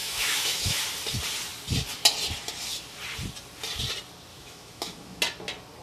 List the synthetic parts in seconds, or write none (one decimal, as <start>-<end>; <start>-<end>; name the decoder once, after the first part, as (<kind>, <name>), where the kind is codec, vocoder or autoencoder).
0.0-0.8 (autoencoder, DAC-VAE); 4.3-5.2

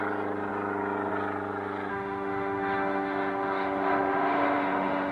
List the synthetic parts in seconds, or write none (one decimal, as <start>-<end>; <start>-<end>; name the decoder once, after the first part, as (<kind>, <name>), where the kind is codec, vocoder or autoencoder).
1.9-5.1 (autoencoder, DAC-VAE)

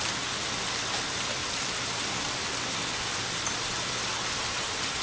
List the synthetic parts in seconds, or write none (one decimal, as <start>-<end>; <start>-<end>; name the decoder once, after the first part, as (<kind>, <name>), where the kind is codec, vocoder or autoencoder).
none

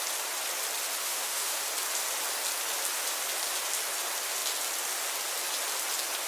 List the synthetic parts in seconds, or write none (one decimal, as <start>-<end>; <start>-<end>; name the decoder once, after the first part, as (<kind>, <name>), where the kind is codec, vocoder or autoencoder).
1.0-1.6 (autoencoder, DAC-VAE)

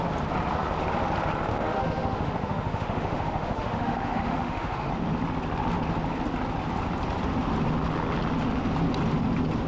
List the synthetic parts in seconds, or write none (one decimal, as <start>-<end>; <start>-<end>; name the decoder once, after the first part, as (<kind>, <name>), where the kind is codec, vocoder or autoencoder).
1.5-4.9 (autoencoder, DAC-VAE)